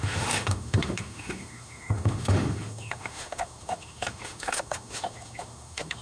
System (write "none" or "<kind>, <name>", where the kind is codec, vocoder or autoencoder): autoencoder, DAC-VAE